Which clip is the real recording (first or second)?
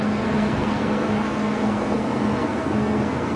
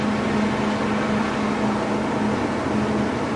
second